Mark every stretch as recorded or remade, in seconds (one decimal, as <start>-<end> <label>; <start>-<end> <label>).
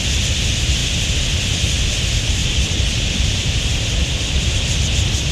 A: 0.0-2.4 recorded; 2.4-3.7 remade; 3.7-5.3 recorded